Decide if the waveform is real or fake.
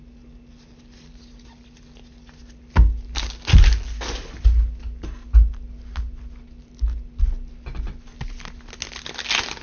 real